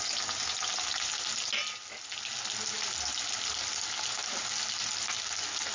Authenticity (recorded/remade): recorded